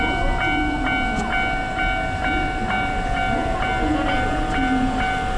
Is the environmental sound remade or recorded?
recorded